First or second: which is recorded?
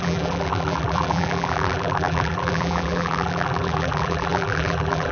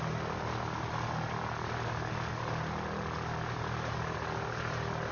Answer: second